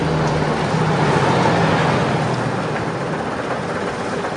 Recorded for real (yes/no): yes